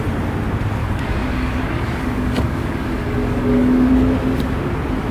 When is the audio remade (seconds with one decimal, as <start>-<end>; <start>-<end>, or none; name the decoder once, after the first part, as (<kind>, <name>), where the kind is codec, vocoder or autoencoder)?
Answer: 0.8-3.9 (codec, DAC)